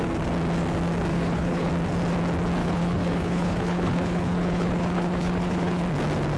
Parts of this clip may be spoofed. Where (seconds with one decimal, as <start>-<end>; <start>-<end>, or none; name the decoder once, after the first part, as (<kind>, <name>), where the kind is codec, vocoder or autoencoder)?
1.1-1.7 (codec, HILCodec); 2.6-5.8